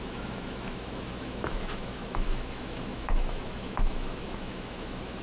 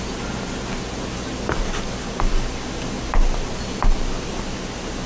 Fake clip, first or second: first